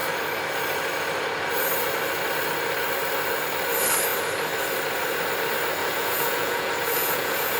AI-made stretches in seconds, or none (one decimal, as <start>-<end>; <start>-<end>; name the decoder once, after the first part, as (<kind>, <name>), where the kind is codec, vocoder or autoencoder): 5.8-7.6 (vocoder, Vocos)